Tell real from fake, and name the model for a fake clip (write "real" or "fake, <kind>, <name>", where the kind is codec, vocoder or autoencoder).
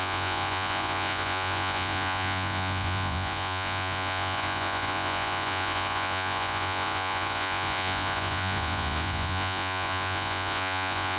fake, vocoder, Vocos